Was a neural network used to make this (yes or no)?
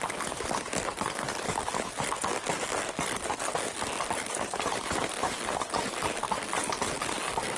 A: no